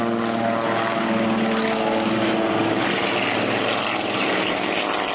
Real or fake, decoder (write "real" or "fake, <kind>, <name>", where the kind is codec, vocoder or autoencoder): real